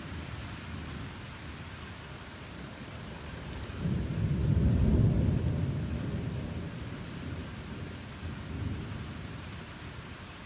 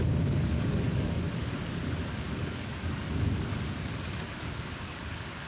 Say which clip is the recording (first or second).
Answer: first